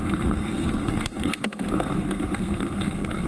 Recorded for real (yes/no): no